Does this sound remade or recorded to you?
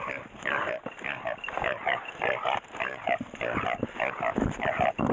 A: recorded